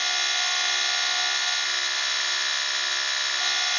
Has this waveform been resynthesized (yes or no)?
no